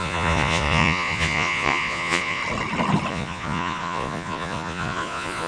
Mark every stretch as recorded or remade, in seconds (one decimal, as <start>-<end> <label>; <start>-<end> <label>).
0.0-2.4 remade; 2.4-3.1 recorded; 3.1-5.5 remade